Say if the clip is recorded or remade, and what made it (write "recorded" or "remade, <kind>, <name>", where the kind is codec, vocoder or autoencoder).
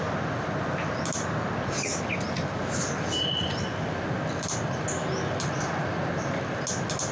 recorded